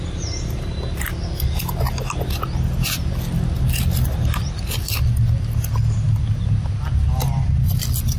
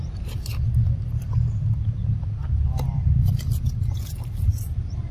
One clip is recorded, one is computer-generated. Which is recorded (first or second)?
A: first